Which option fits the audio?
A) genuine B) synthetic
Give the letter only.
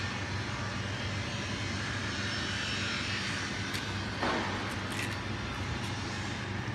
A